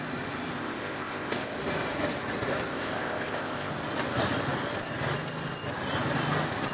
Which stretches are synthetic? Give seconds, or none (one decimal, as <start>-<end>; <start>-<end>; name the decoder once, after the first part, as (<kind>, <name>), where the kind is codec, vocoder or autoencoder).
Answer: 0.6-1.6 (codec, ZipCodec); 2.7-3.7